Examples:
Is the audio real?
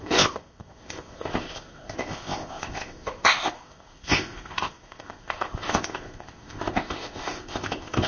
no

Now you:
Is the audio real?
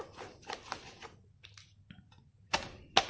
yes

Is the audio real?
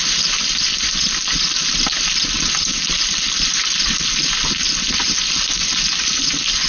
yes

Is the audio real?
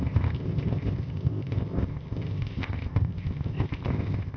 no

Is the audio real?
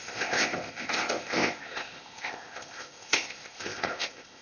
no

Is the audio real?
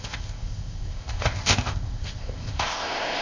no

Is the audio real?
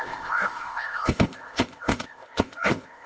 no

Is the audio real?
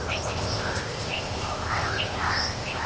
no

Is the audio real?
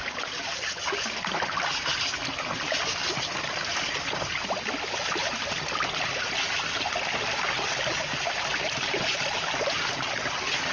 yes